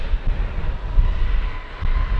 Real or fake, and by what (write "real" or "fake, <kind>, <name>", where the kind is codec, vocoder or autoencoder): real